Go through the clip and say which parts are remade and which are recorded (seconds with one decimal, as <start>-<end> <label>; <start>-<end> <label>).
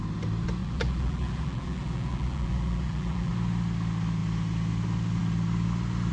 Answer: 0.0-0.6 recorded; 0.6-3.3 remade; 3.3-6.1 recorded